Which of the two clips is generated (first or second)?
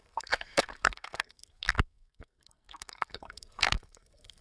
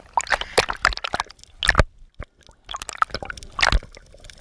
first